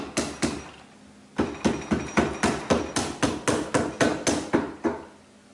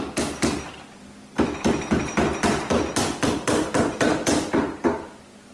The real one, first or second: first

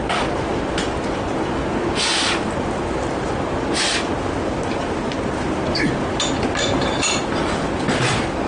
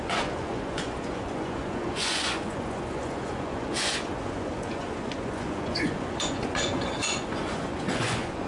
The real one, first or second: first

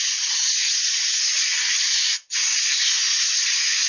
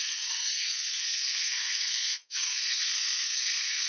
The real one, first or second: first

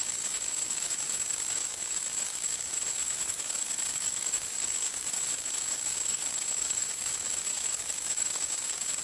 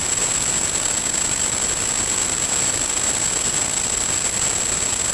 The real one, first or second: second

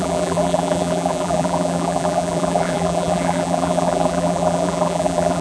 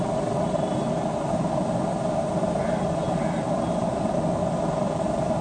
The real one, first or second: second